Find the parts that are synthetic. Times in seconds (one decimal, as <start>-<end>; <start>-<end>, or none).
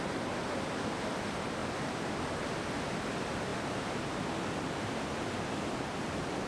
1.6-2.1; 3.5-5.1; 5.7-6.5